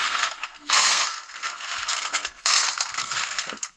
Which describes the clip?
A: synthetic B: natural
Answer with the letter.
A